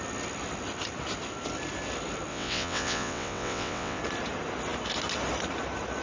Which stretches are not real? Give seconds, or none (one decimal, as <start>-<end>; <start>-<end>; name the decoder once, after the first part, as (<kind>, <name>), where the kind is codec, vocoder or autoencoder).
2.3-4.0 (vocoder, WaveNeXt)